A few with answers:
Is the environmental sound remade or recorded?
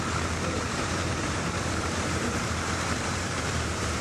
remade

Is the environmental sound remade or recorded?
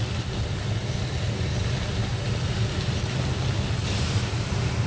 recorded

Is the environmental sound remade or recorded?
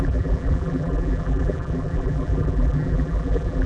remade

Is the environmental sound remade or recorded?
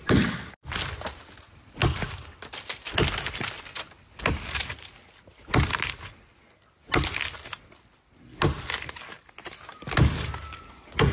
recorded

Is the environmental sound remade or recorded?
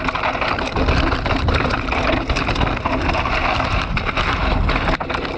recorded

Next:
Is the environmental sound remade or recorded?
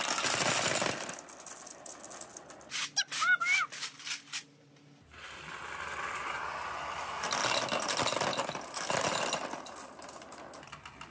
recorded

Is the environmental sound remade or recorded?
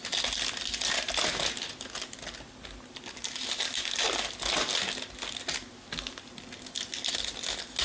recorded